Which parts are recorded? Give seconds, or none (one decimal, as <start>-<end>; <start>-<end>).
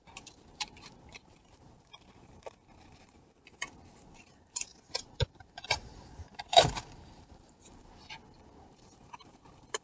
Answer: 7.8-8.4